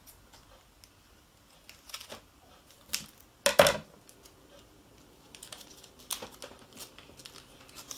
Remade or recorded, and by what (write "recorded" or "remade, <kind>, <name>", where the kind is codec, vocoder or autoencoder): recorded